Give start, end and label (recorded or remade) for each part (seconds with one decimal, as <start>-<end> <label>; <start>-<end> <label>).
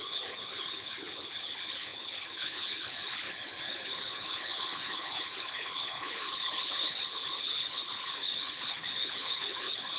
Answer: 0.0-10.0 remade